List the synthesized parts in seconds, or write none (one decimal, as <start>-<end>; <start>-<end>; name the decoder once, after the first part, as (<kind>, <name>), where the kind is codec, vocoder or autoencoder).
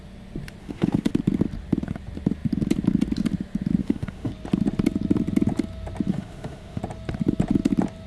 0.6-1.1 (autoencoder, DAC-VAE); 3.8-4.3; 6.1-6.8